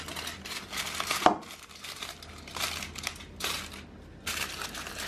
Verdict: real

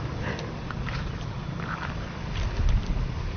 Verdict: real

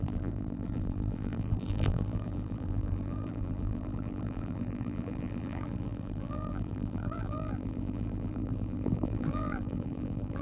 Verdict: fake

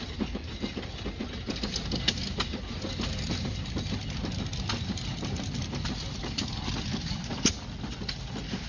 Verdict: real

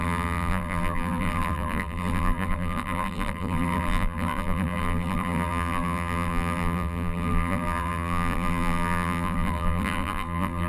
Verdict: fake